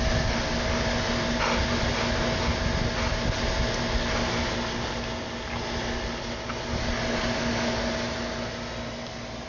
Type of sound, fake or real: real